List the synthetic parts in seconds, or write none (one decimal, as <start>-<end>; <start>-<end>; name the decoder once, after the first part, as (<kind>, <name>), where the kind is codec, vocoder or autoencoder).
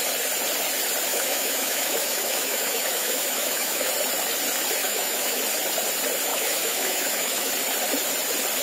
1.1-3.9 (autoencoder, DAC-VAE); 4.8-5.4; 6.3-7.5